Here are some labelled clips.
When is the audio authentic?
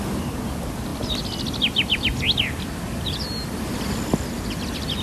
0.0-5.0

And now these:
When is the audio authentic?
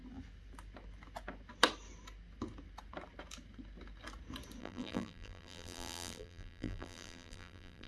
0.0-4.6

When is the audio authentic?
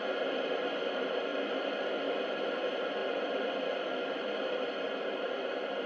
0.0-5.9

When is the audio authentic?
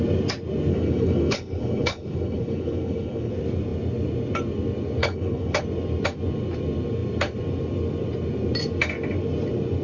0.0-0.7; 3.3-5.0; 5.6-9.8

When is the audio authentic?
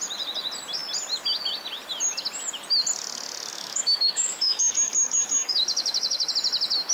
0.0-3.5; 6.3-6.9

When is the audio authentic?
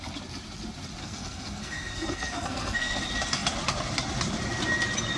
0.0-1.0; 3.0-5.2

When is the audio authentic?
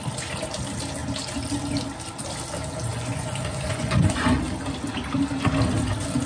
0.0-2.9; 4.4-6.3